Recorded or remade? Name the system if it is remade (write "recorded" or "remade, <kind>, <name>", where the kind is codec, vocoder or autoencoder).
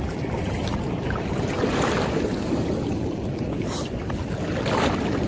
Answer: remade, vocoder, BigVGAN v2